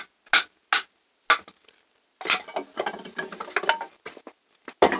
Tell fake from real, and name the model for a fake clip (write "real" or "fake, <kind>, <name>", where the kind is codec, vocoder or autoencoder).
real